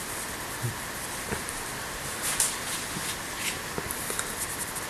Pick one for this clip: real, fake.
real